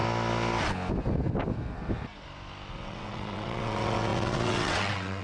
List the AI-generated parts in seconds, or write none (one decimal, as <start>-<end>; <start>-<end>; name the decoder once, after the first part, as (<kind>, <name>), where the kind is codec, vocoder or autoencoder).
2.7-5.2 (vocoder, WaveNeXt)